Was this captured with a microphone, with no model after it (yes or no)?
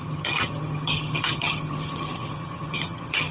no